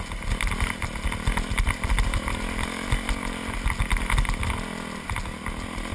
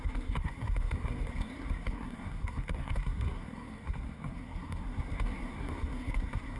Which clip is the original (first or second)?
first